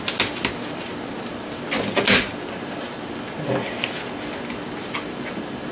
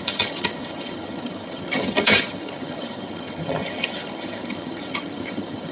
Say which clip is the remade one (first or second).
second